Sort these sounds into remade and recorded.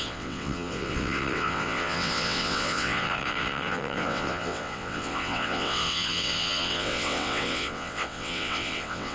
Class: remade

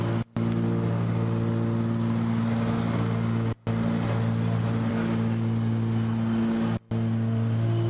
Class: recorded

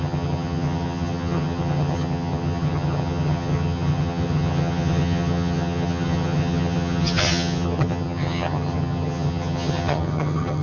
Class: remade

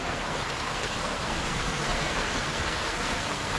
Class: remade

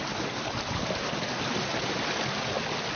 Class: recorded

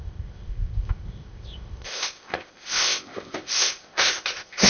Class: remade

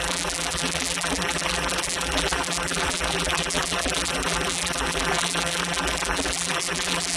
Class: remade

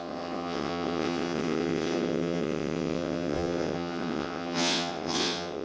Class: remade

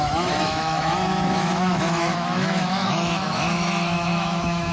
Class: remade